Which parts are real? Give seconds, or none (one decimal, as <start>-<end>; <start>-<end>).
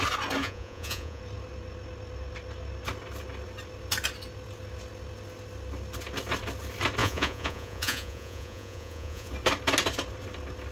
0.0-0.4; 1.2-7.0; 9.3-10.7